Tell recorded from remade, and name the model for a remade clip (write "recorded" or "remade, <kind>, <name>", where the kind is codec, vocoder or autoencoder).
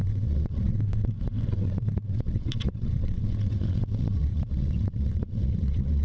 remade, vocoder, WaveNeXt